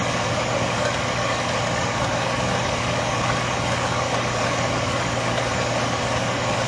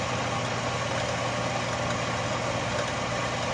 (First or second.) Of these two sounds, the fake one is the first